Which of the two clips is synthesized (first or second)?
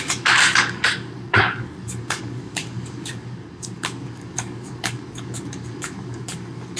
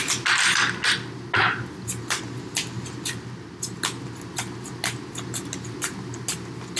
first